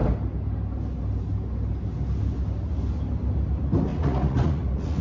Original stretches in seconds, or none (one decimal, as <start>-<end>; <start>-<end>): 0.0-3.9